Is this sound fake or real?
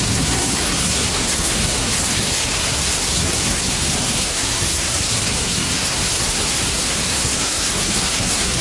fake